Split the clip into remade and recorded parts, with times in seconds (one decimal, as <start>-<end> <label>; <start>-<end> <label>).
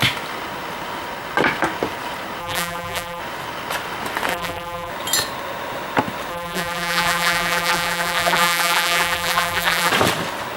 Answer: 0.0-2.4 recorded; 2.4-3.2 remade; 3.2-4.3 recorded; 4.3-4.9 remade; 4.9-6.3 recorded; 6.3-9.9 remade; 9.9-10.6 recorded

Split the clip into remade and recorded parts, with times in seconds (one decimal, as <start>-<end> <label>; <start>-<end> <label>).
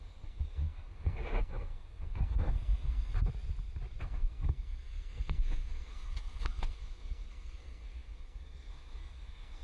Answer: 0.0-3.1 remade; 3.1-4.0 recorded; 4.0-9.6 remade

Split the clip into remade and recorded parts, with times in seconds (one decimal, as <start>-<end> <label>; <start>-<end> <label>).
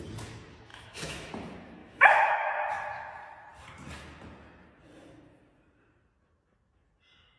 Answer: 0.0-0.7 recorded; 0.7-1.3 remade; 1.3-1.8 recorded; 1.8-2.5 remade; 2.5-7.4 recorded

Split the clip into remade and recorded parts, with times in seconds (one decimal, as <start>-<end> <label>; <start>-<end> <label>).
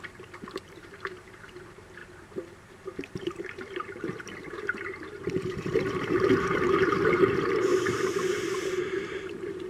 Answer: 0.0-2.0 remade; 2.0-3.2 recorded; 3.2-7.7 remade; 7.7-8.4 recorded; 8.4-9.7 remade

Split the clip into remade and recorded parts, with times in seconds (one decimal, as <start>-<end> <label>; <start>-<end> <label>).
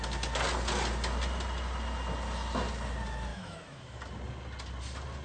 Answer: 0.0-3.3 recorded; 3.3-4.0 remade; 4.0-5.2 recorded